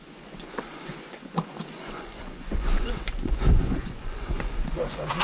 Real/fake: fake